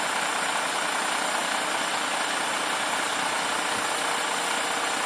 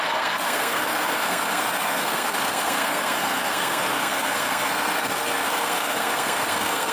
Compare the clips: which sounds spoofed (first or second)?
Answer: second